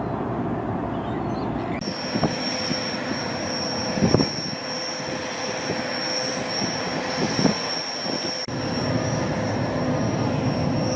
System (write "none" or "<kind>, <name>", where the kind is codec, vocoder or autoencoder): none